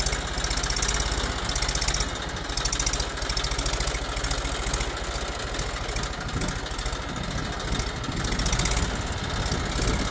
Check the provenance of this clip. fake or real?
real